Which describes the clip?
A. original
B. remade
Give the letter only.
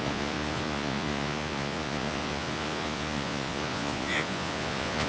B